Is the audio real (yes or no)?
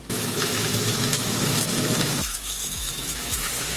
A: no